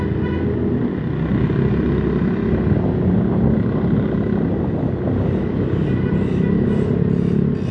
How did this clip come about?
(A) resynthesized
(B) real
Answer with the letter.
B